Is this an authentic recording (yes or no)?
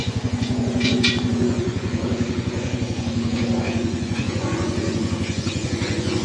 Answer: no